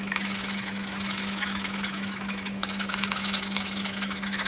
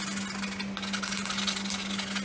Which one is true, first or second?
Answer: second